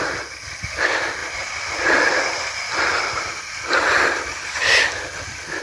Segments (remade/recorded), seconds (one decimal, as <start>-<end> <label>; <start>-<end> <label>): 0.0-1.2 recorded; 1.2-3.0 remade; 3.0-5.6 recorded